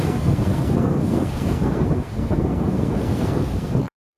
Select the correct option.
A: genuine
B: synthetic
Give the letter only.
B